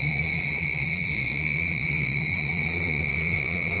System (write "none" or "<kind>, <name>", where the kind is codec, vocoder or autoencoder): vocoder, Vocos